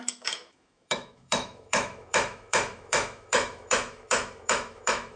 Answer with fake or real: fake